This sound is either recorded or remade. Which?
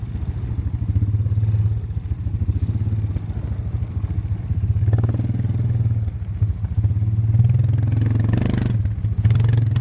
recorded